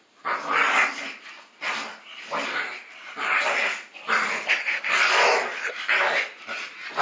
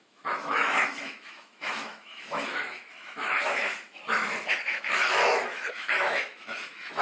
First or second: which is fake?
second